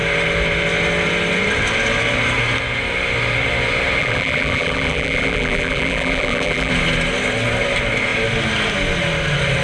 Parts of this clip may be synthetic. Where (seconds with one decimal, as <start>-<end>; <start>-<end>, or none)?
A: 4.0-6.7